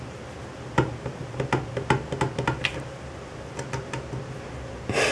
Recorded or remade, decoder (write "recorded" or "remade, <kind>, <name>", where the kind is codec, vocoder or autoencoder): recorded